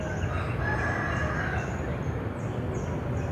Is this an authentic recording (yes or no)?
yes